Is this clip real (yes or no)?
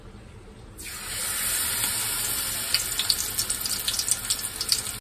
yes